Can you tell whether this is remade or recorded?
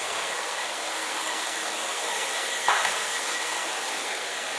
remade